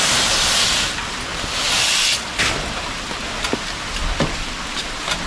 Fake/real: real